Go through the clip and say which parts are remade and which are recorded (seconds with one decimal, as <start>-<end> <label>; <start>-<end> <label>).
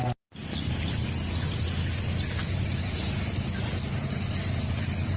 0.0-5.2 recorded